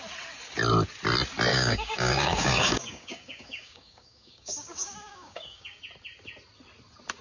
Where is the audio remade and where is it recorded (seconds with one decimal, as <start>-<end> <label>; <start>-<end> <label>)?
0.0-1.5 recorded; 1.5-5.8 remade; 5.8-7.2 recorded